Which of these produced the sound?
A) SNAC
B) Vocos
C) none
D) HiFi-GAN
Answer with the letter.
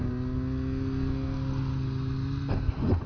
C